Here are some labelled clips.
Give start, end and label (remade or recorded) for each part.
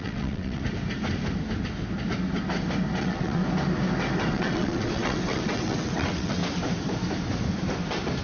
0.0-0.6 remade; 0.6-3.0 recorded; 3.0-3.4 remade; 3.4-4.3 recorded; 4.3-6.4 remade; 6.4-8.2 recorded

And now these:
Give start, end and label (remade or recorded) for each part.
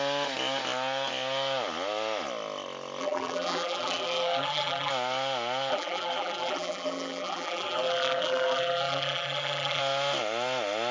0.0-3.0 recorded; 3.0-4.9 remade; 4.9-5.7 recorded; 5.7-9.8 remade; 9.8-10.9 recorded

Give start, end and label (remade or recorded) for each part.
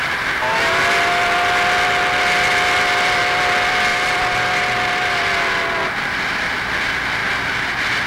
0.0-3.9 recorded; 3.9-5.2 remade; 5.2-7.2 recorded; 7.2-8.1 remade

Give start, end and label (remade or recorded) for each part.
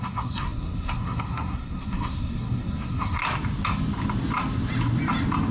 0.0-3.2 remade; 3.2-5.5 recorded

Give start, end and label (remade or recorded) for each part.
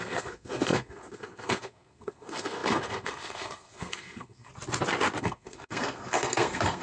0.0-4.5 remade; 4.5-5.2 recorded; 5.2-6.8 remade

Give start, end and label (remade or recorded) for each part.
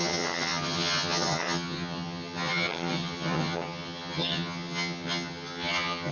0.0-6.1 remade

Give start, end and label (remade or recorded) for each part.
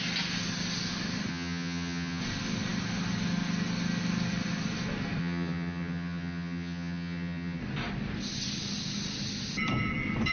0.0-1.3 recorded; 1.3-2.2 remade; 2.2-5.2 recorded; 5.2-7.6 remade; 7.6-10.3 recorded